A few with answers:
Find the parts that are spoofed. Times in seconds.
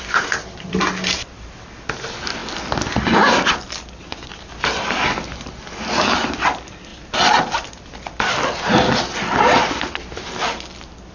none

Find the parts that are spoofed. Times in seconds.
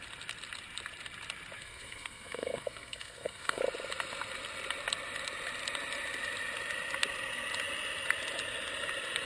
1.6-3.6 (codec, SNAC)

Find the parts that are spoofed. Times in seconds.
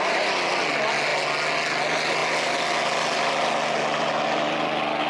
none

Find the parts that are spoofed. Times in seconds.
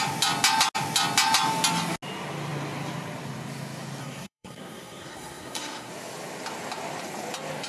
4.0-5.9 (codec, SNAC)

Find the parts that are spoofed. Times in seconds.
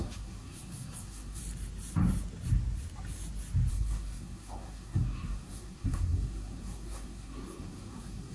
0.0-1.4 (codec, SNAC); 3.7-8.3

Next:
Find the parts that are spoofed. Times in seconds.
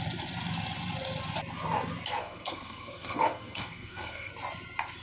2.2-4.3 (codec, SNAC)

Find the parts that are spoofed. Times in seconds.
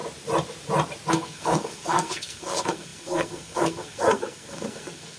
1.1-5.2 (codec, SNAC)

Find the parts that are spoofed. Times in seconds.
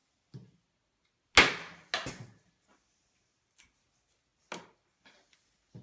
none